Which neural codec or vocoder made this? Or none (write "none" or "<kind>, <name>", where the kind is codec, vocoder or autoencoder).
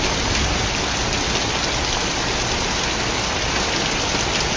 none